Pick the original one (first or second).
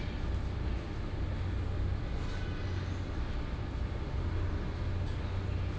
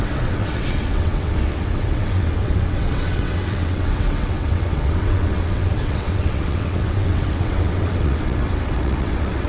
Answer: first